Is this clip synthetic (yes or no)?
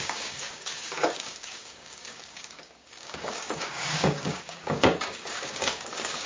yes